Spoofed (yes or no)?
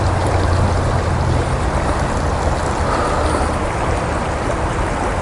no